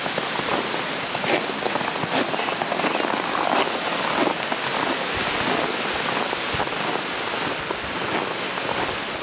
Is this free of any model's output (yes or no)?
yes